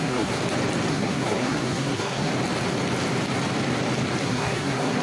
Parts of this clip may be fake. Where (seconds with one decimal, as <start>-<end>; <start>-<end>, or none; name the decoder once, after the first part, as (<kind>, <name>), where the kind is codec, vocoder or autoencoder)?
0.0-0.4 (codec, SNAC); 0.9-2.3; 4.2-5.0